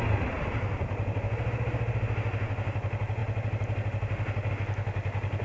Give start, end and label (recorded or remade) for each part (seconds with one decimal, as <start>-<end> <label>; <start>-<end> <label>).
0.0-5.4 recorded